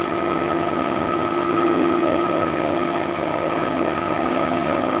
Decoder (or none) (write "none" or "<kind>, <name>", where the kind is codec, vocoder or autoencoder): vocoder, HiFi-GAN